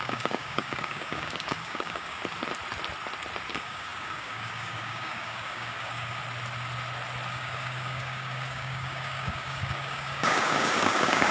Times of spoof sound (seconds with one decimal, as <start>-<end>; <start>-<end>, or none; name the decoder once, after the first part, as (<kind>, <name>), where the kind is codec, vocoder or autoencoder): 0.0-2.2 (codec, DAC); 3.5-6.2; 7.3-11.3